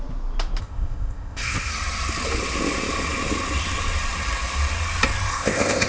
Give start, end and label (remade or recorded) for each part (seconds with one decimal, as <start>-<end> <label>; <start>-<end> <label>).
0.0-0.6 recorded; 0.6-1.7 remade; 1.7-5.3 recorded; 5.3-5.9 remade